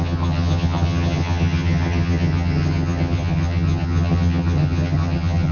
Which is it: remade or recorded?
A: remade